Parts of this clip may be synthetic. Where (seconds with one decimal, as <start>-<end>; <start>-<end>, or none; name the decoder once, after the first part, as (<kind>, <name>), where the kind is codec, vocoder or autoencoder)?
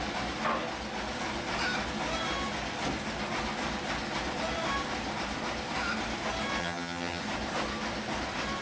6.6-7.2 (vocoder, HiFi-GAN)